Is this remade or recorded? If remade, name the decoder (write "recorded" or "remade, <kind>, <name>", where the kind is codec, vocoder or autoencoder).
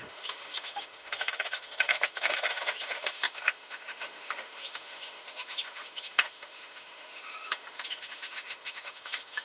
remade, autoencoder, DAC-VAE